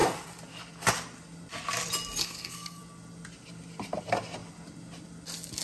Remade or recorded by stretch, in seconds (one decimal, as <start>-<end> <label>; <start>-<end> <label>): 0.0-2.2 recorded; 2.2-2.8 remade; 2.8-5.6 recorded